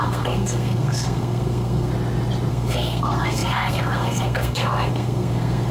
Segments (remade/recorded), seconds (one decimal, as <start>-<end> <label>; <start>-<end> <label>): 0.0-1.9 remade; 1.9-2.5 recorded; 2.5-5.7 remade